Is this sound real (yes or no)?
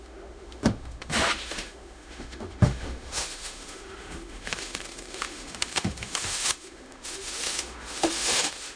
no